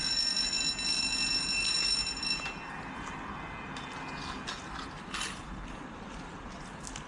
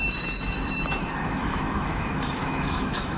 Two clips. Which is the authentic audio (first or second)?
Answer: first